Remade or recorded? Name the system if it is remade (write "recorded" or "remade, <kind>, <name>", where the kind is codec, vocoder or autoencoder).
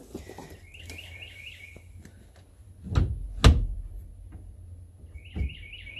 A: recorded